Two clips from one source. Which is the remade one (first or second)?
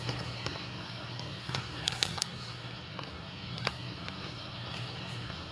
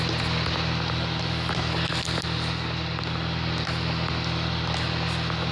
first